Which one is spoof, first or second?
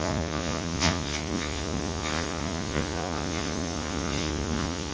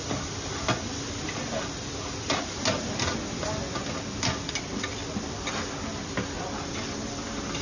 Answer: first